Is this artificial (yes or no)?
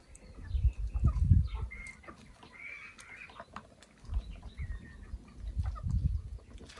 no